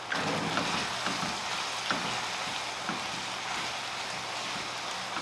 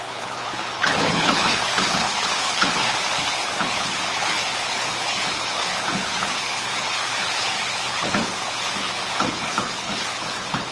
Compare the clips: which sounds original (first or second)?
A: first